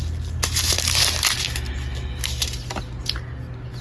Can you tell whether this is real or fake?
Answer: real